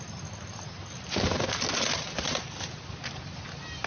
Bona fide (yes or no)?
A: yes